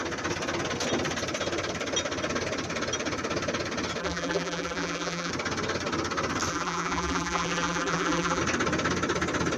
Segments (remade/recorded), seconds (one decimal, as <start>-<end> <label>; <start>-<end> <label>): 0.0-4.0 recorded; 4.0-5.3 remade; 5.3-6.5 recorded; 6.5-8.4 remade; 8.4-9.6 recorded